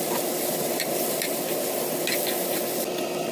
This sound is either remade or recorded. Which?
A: recorded